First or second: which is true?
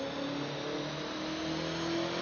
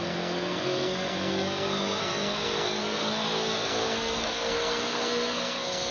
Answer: first